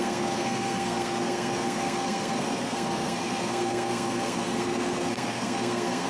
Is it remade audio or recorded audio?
remade